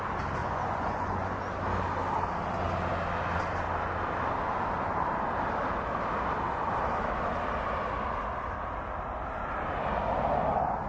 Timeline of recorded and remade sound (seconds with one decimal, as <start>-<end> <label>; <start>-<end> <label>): 0.0-0.4 recorded; 0.4-1.5 remade; 1.5-10.9 recorded